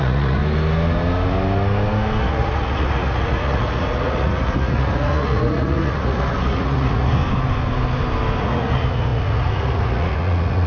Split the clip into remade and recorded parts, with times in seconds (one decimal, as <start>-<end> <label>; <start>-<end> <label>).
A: 0.0-0.4 remade; 0.4-2.2 recorded; 2.2-7.2 remade; 7.2-8.4 recorded; 8.4-10.7 remade